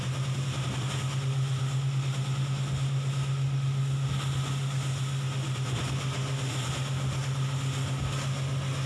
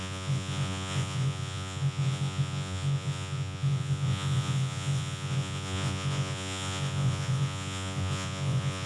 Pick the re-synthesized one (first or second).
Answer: second